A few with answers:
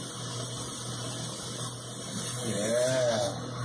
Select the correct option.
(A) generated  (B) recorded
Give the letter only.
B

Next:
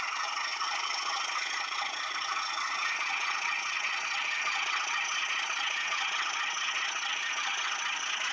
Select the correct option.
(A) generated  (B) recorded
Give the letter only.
A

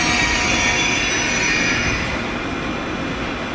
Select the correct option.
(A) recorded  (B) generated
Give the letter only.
A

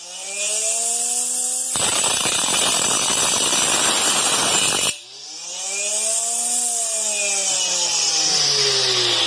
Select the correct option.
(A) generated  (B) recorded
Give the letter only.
B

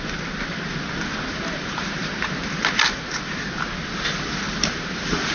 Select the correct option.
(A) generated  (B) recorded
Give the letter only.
B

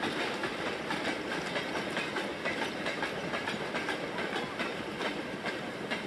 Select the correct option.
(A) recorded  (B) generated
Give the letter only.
A